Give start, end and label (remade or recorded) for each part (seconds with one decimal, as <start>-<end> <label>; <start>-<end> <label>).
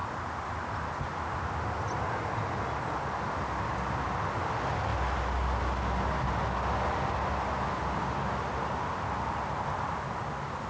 0.0-10.7 recorded